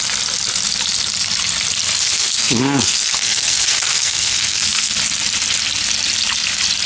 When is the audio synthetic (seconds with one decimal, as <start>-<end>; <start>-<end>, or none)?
2.0-4.9

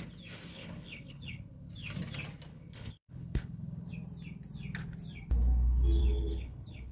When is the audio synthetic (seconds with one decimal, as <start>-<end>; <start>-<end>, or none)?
0.5-1.7; 2.5-3.9; 6.0-6.9

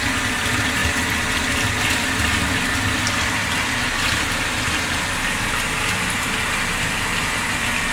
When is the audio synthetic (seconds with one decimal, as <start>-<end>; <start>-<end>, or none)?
none

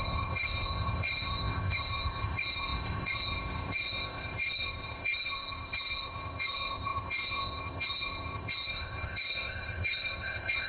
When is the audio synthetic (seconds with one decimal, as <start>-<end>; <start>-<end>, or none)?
0.0-10.7

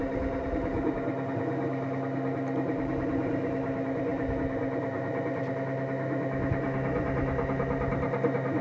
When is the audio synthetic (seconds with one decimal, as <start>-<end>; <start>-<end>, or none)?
none